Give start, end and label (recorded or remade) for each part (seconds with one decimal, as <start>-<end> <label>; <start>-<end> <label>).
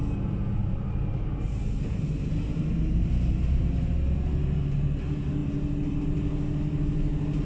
0.0-0.6 recorded; 0.6-3.9 remade; 3.9-7.5 recorded